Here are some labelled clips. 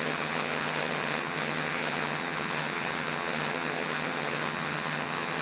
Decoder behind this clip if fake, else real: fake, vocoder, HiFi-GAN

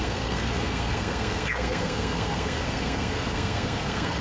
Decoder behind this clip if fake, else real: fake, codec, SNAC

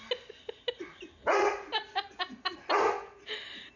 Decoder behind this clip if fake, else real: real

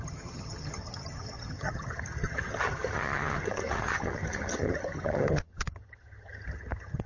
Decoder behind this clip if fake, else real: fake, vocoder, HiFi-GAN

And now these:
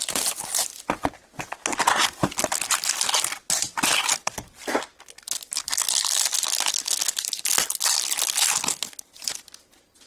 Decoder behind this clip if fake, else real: real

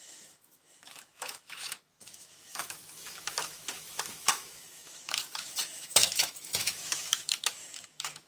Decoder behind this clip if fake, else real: fake, autoencoder, DAC-VAE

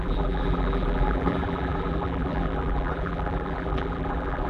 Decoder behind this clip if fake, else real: fake, vocoder, BigVGAN v2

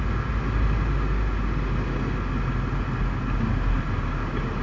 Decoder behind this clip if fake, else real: real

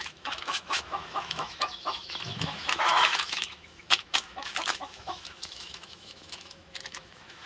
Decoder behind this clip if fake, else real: fake, autoencoder, DAC-VAE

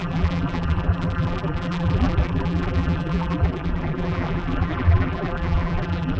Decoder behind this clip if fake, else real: fake, vocoder, BigVGAN v2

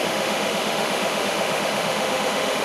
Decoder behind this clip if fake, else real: fake, autoencoder, DAC-VAE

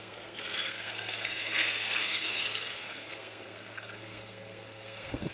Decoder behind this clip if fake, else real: fake, codec, SNAC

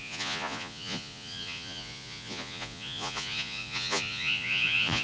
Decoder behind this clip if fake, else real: fake, vocoder, Vocos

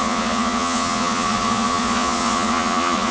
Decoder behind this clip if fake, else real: fake, vocoder, Vocos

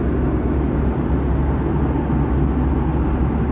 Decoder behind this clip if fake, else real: real